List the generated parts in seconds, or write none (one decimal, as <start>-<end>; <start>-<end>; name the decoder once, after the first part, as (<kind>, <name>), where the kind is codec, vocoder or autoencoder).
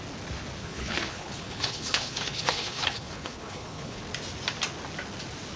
0.6-4.0 (codec, HILCodec)